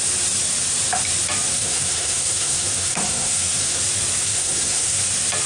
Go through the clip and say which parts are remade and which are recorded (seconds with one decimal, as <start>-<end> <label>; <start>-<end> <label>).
0.0-1.5 recorded; 1.5-3.8 remade; 3.8-4.2 recorded; 4.2-5.0 remade; 5.0-5.5 recorded